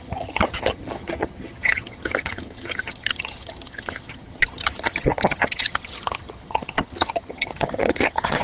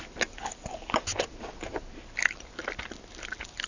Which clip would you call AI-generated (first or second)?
first